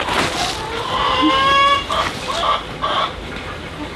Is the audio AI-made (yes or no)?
no